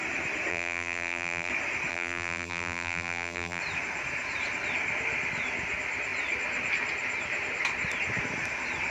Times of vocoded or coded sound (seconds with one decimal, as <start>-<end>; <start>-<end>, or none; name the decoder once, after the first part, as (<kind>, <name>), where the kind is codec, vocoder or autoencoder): 0.5-1.5 (vocoder, BigVGAN v2); 1.9-3.6